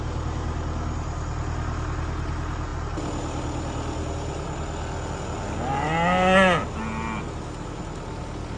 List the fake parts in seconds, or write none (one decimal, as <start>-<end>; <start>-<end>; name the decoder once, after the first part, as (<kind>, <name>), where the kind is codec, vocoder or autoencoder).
none